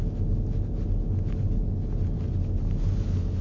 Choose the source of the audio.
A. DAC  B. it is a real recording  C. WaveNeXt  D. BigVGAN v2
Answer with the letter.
B